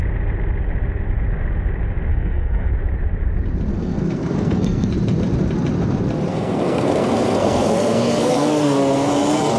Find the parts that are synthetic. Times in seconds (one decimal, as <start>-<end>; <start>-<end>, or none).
2.1-2.7; 3.7-4.9; 6.3-9.1

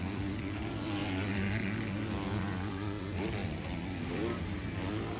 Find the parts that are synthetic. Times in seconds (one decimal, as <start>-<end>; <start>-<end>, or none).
none

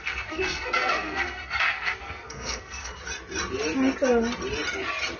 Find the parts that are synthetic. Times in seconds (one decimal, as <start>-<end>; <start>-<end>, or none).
0.0-3.0

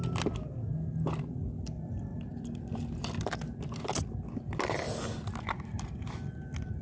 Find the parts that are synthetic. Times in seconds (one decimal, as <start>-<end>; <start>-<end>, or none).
none